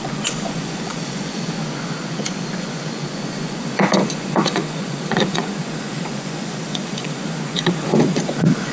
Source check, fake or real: fake